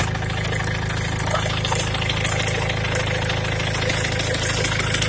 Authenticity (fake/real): real